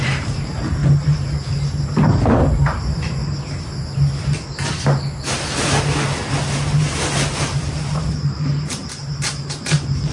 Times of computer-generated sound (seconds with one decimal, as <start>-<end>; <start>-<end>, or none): 0.0-3.2; 6.5-10.1